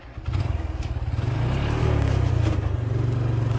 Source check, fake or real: real